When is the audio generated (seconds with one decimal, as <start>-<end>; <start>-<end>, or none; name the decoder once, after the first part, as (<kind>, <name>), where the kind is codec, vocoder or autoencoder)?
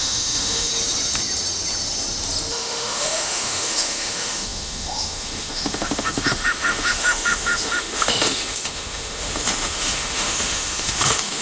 0.0-0.7 (autoencoder, DAC-VAE); 2.5-11.4